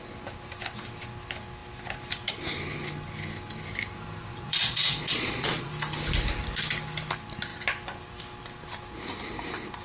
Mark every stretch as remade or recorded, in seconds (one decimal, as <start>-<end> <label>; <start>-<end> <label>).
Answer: 0.0-4.3 recorded; 4.3-5.7 remade; 5.7-9.8 recorded